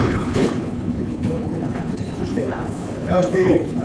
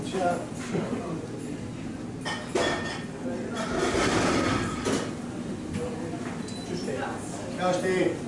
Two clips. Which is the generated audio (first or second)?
first